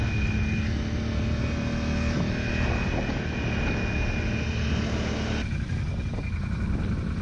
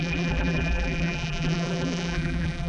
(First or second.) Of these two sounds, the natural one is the first